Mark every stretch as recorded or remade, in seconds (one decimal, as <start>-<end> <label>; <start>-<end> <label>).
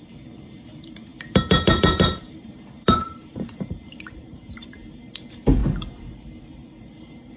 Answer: 0.0-5.6 remade; 5.6-7.0 recorded; 7.0-7.4 remade